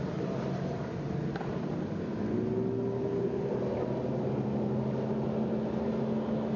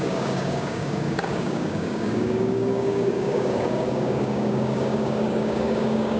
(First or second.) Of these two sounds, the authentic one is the first